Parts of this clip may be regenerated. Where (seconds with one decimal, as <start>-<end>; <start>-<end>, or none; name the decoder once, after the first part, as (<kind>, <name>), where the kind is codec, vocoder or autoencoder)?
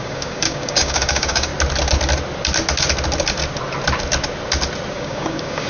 0.0-1.5 (codec, DAC); 4.9-5.7